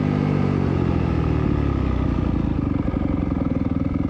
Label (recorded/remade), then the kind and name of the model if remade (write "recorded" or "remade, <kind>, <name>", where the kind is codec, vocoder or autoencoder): recorded